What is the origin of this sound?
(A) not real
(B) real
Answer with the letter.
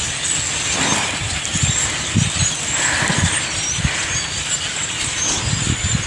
B